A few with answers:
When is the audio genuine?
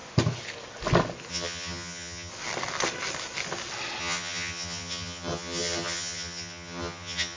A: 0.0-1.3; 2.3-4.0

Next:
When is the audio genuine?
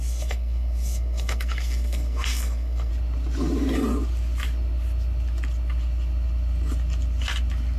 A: 2.9-7.8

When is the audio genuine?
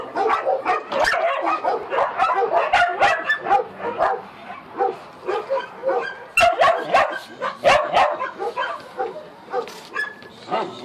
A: 0.0-10.8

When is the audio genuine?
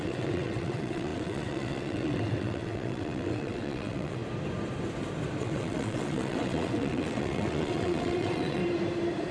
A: 4.2-5.4; 8.6-9.3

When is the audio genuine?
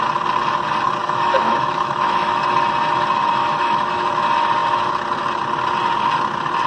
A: 0.0-1.0; 2.4-3.4; 4.1-6.7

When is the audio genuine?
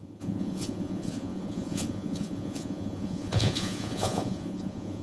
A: none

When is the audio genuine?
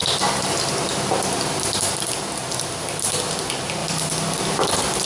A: 3.1-3.8